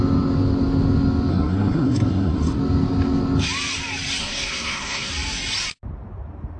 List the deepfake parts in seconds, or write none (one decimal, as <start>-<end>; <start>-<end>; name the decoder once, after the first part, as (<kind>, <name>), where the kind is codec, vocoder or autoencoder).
1.3-2.6 (codec, SNAC); 4.2-5.1